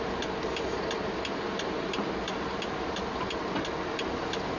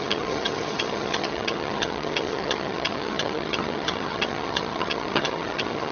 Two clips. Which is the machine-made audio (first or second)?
second